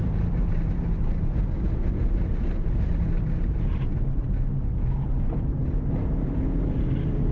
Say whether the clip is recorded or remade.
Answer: remade